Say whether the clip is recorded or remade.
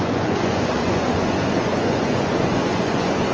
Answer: remade